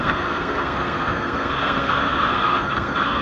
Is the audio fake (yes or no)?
yes